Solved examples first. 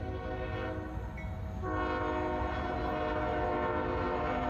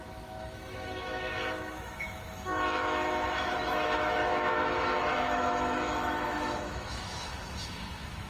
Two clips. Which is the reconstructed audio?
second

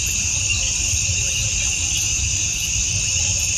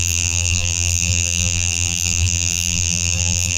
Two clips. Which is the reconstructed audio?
second